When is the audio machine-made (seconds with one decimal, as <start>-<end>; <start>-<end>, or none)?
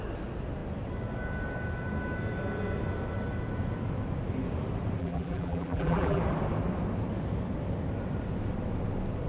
5.0-6.2